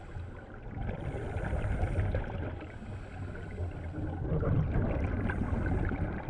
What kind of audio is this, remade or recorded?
recorded